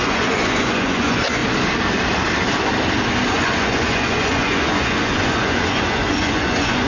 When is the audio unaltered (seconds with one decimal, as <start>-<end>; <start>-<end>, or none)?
1.4-3.3